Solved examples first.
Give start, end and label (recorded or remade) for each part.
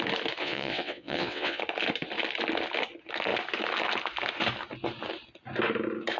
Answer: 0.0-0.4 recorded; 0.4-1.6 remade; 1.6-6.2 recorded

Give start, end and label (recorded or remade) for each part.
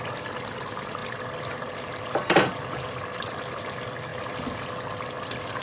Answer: 0.0-5.6 recorded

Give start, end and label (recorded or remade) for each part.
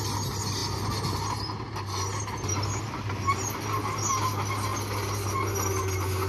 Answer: 0.0-6.3 recorded